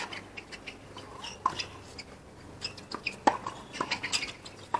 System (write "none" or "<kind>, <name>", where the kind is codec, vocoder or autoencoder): none